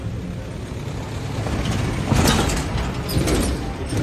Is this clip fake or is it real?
real